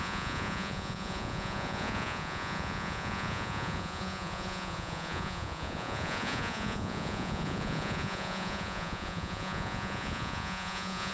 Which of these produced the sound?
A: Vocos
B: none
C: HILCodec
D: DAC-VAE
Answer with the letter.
A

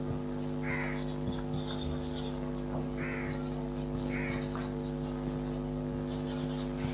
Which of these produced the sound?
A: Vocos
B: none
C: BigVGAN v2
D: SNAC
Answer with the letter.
B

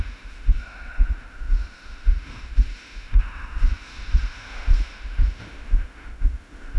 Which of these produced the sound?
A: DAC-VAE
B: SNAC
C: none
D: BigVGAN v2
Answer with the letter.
A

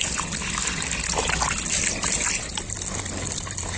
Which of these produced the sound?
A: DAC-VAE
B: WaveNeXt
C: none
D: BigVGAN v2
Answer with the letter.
C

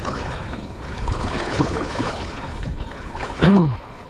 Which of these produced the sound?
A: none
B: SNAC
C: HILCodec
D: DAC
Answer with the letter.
C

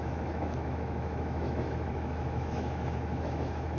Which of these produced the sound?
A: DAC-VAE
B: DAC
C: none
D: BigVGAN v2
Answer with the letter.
A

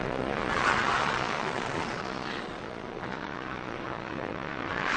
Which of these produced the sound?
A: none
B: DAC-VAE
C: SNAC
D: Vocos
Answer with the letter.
D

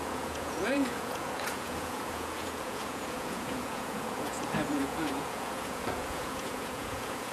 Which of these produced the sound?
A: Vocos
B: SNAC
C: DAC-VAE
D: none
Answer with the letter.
A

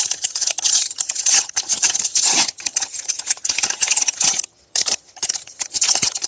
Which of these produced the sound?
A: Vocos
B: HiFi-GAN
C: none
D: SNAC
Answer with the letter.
B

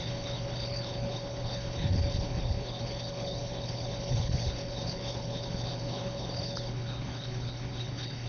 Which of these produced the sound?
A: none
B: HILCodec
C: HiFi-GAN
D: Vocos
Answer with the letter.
B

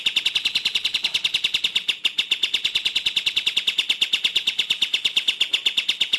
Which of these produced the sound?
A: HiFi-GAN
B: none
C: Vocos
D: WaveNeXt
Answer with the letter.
B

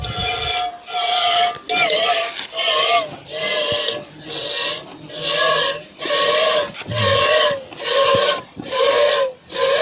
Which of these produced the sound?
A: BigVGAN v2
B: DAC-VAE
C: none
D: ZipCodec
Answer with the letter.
C